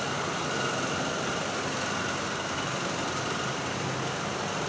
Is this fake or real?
fake